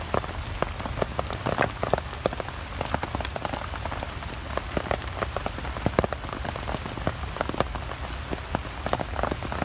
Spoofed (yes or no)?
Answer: no